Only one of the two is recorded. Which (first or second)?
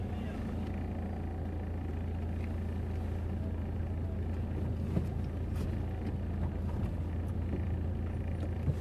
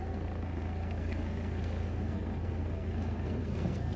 first